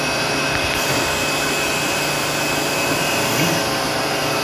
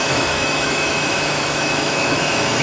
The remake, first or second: second